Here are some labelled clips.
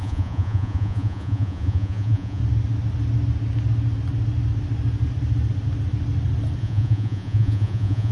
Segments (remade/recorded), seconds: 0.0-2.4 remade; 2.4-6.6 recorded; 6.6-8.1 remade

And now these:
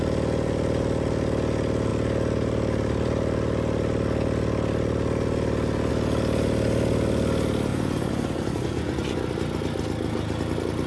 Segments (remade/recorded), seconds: 0.0-7.7 recorded; 7.7-9.2 remade; 9.2-10.9 recorded

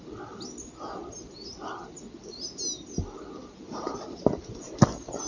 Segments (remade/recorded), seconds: 0.0-5.3 recorded

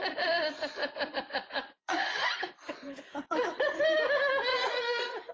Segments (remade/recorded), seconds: 0.0-0.8 recorded; 0.8-3.8 remade; 3.8-4.5 recorded; 4.5-5.3 remade

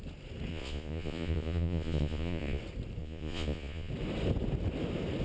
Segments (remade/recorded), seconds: 0.0-0.5 recorded; 0.5-2.6 remade; 2.6-3.0 recorded; 3.0-3.9 remade; 3.9-5.2 recorded